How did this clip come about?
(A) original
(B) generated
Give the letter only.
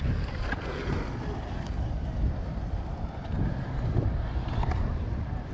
A